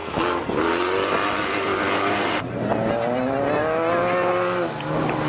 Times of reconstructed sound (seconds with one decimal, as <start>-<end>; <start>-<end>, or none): none